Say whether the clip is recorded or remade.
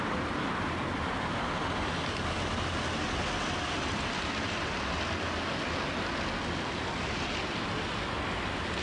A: recorded